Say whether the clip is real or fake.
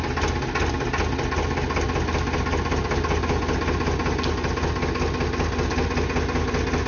real